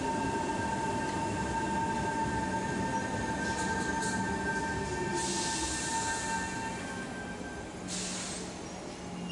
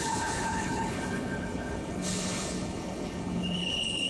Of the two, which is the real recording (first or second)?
first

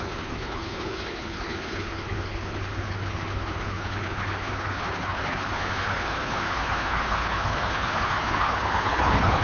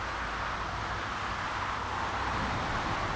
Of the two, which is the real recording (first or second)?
second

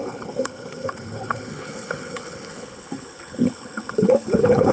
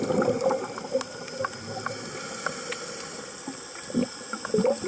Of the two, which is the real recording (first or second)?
second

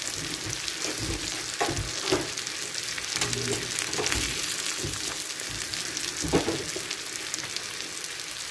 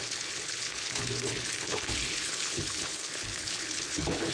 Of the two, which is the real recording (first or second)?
first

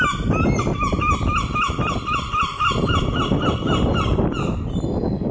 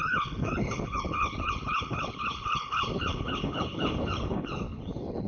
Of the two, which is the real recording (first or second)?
first